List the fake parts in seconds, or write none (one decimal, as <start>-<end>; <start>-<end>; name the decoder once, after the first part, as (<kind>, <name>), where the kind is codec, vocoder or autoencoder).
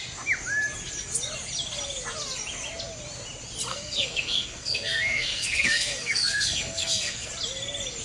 3.7-7.3 (codec, SNAC)